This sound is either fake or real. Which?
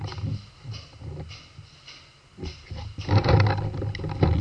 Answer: real